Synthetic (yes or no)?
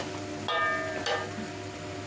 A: no